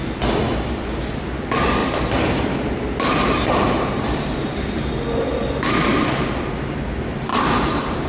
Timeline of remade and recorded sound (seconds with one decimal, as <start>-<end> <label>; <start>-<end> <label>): 0.0-1.8 recorded; 1.8-4.8 remade; 4.8-7.3 recorded; 7.3-8.1 remade